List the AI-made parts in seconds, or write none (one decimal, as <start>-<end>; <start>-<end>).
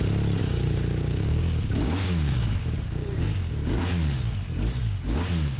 0.4-3.8; 4.8-5.6